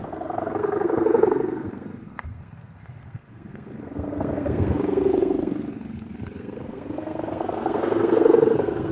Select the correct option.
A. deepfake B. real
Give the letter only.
A